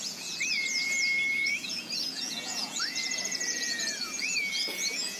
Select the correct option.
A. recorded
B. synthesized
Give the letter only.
B